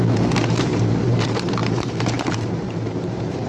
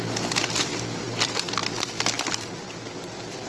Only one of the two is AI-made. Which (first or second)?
first